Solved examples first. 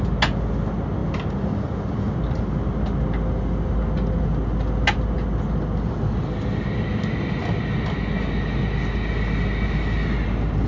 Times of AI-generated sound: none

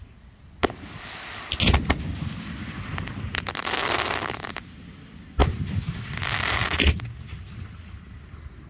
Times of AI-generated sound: 5.4-5.9 (vocoder, BigVGAN v2)